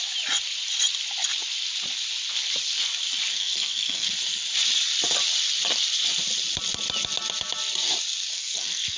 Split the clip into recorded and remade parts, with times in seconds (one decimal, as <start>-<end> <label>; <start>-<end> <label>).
0.0-3.3 recorded; 3.3-4.1 remade; 4.1-8.3 recorded; 8.3-9.0 remade